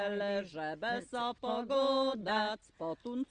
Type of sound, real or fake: real